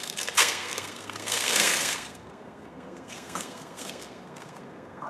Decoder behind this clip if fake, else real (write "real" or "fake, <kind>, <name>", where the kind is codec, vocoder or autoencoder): fake, codec, SNAC